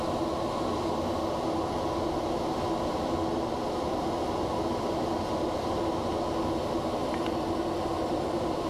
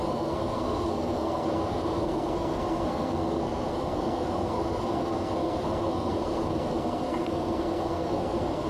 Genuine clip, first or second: first